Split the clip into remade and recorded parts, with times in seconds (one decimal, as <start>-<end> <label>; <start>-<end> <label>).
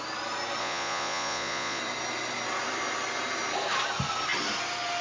0.0-0.6 recorded; 0.6-1.8 remade; 1.8-5.0 recorded